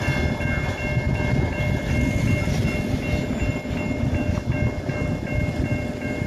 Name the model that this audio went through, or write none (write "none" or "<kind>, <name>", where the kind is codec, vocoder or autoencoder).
none